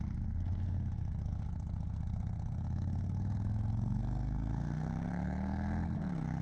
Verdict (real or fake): fake